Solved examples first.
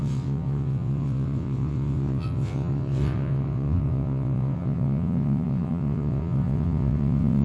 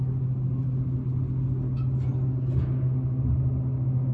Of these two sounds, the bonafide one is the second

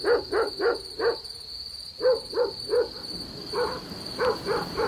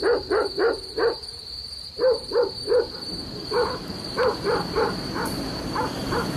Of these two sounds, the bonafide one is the first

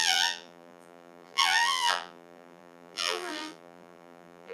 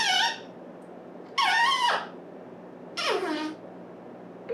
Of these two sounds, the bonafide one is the second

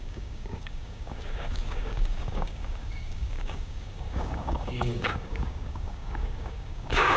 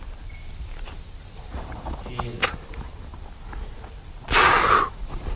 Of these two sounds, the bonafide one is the second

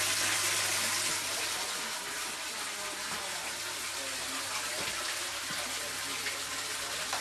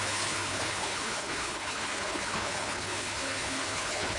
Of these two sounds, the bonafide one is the first